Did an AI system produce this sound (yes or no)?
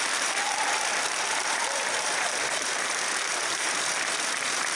yes